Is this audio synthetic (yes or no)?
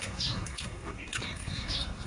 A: yes